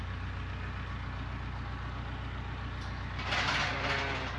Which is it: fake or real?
real